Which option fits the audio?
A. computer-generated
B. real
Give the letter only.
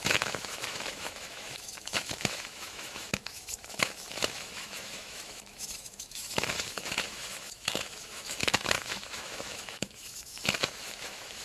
A